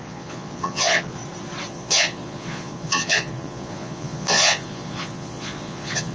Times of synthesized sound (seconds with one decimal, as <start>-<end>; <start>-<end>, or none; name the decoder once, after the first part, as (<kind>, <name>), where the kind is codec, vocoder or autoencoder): 0.0-1.2 (vocoder, Vocos); 1.7-6.1